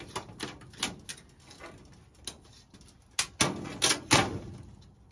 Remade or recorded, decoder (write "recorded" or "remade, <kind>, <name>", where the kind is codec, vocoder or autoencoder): recorded